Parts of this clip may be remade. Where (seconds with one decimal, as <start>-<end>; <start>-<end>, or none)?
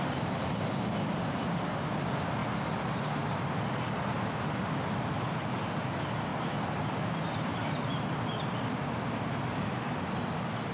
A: none